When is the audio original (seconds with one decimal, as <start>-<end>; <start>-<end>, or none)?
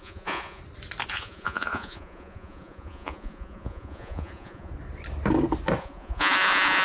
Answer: 0.6-1.1; 4.7-5.8